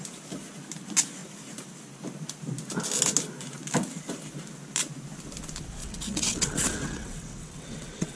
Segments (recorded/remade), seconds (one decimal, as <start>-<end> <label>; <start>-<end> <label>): 0.0-5.8 recorded; 5.8-8.2 remade

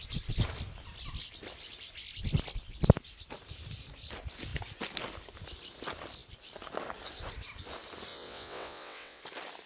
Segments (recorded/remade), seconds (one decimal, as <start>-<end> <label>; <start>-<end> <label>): 0.0-8.1 recorded; 8.1-9.2 remade; 9.2-9.7 recorded

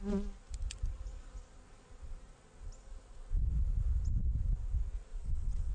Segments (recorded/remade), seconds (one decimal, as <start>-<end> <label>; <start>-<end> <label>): 0.0-5.1 recorded; 5.1-5.7 remade

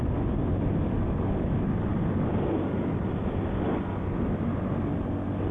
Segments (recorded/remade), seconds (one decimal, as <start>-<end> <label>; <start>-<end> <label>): 0.0-5.5 recorded

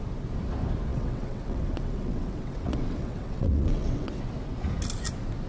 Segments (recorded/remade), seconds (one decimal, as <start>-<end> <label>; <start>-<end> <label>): 0.0-0.9 recorded; 0.9-4.2 remade; 4.2-5.5 recorded

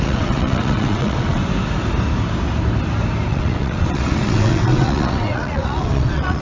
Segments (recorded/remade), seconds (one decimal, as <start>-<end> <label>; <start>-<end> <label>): 0.0-1.4 remade; 1.4-3.3 recorded; 3.3-6.4 remade

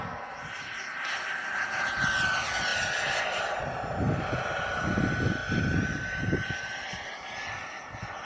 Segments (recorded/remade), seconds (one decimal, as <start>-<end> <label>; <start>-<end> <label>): 0.0-8.2 recorded

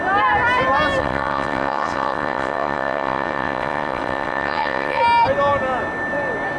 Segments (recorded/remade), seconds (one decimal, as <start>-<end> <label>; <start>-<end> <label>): 0.0-1.0 recorded; 1.0-5.0 remade; 5.0-6.6 recorded